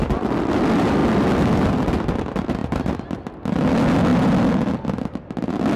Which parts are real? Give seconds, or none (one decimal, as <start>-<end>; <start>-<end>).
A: 0.0-5.8